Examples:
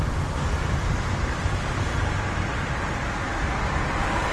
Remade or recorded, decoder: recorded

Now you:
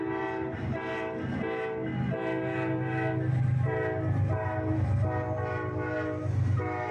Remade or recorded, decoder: recorded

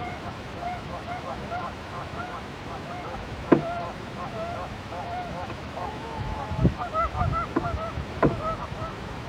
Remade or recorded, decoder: remade, autoencoder, DAC-VAE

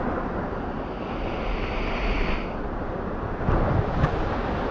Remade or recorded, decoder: recorded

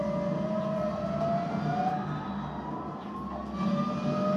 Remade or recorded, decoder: recorded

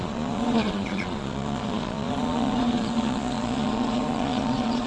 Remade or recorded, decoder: remade, vocoder, Vocos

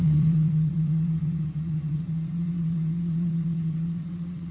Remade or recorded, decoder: remade, vocoder, WaveNeXt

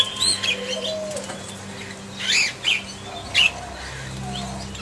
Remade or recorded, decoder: recorded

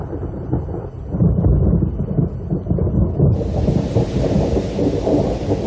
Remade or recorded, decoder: recorded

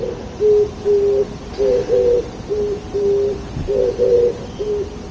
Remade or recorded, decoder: recorded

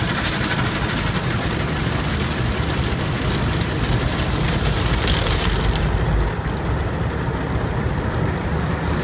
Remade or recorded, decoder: recorded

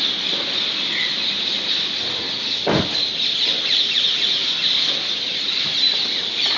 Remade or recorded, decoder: recorded